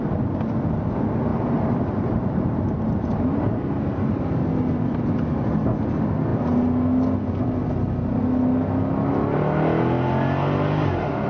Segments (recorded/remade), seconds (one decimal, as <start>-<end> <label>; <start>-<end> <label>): 0.0-1.3 recorded; 1.3-4.2 remade; 4.2-11.3 recorded